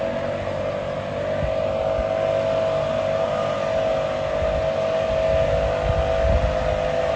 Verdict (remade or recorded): recorded